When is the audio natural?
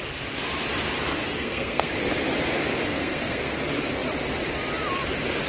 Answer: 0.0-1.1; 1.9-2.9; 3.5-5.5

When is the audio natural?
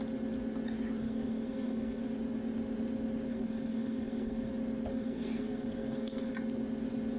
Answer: 0.0-1.0; 2.0-3.3; 4.5-4.9; 6.3-7.2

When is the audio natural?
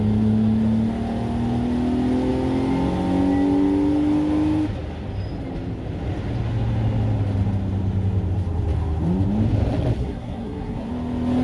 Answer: 0.0-10.0; 10.9-11.4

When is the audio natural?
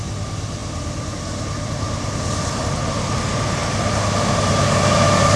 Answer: 0.0-5.4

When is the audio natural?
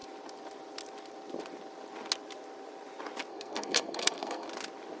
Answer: 0.0-3.3; 4.5-5.0